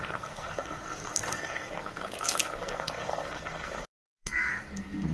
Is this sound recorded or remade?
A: remade